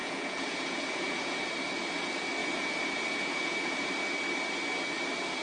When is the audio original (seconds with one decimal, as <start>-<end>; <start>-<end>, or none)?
1.5-2.4; 3.9-5.4